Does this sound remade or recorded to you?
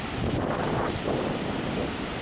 recorded